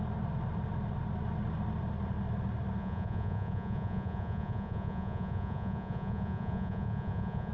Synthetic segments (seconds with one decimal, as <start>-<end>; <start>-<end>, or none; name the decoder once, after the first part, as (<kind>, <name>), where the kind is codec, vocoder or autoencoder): 2.8-7.5 (vocoder, Vocos)